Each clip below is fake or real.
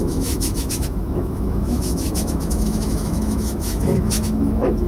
fake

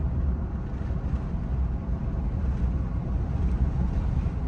real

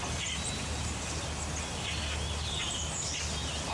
real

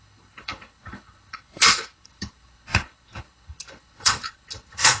fake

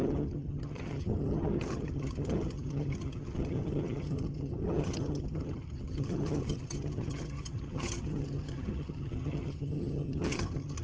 fake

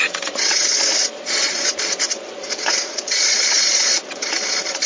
fake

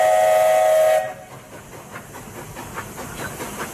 real